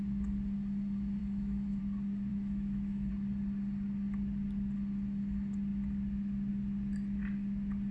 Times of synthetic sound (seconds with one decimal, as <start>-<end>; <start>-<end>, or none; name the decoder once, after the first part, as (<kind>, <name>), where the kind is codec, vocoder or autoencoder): 1.2-1.8 (autoencoder, DAC-VAE); 2.3-3.1